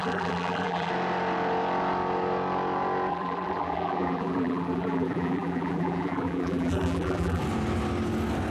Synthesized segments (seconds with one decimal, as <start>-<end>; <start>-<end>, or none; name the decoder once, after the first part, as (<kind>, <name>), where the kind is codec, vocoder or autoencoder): 0.0-0.9 (vocoder, BigVGAN v2); 3.1-7.4